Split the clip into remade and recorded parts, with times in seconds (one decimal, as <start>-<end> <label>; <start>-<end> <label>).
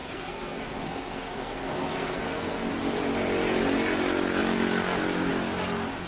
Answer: 0.0-2.7 remade; 2.7-6.1 recorded